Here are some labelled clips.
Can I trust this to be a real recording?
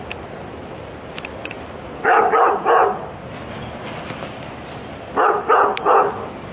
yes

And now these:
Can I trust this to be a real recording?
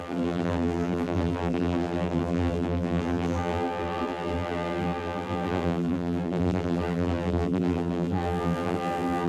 no